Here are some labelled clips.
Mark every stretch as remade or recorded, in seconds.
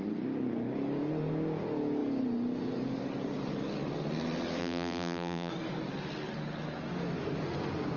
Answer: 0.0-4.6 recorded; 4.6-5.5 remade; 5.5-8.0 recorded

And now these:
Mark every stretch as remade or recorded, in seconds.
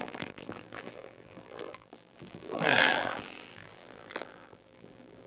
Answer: 0.0-5.3 remade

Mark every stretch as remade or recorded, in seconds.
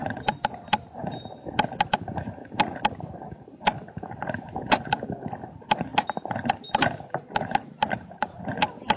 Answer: 0.0-9.0 recorded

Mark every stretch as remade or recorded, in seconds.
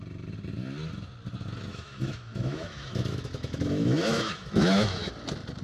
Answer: 0.0-1.7 recorded; 1.7-5.1 remade; 5.1-5.6 recorded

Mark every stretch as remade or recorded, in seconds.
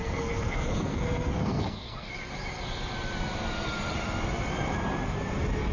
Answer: 0.0-2.1 remade; 2.1-5.7 recorded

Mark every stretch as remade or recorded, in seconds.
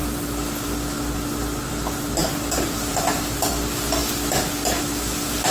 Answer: 0.0-2.2 recorded; 2.2-3.5 remade; 3.5-5.5 recorded